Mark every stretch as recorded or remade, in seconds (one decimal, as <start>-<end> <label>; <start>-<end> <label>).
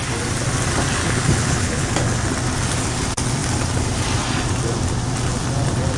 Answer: 0.0-1.0 recorded; 1.0-1.9 remade; 1.9-6.0 recorded